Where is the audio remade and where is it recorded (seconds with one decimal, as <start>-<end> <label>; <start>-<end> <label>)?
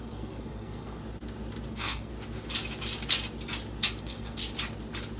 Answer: 0.0-1.0 remade; 1.0-1.7 recorded; 1.7-2.1 remade; 2.1-4.0 recorded; 4.0-4.4 remade; 4.4-5.2 recorded